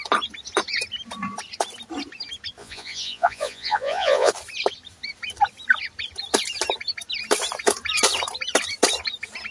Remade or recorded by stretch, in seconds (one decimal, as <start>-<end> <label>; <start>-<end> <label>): 0.0-2.6 recorded; 2.6-4.3 remade; 4.3-9.5 recorded